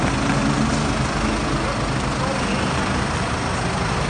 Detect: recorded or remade recorded